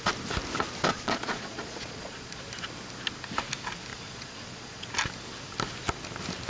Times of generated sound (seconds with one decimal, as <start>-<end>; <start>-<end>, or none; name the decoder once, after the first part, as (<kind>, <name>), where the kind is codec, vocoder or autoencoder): 0.9-2.4 (vocoder, Vocos); 3.9-4.9